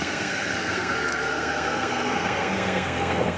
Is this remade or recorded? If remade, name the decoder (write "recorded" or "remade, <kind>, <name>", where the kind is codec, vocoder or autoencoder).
remade, codec, SNAC